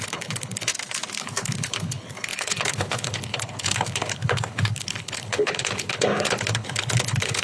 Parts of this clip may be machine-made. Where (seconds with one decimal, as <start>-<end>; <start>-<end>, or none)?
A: 0.0-0.7; 1.2-7.4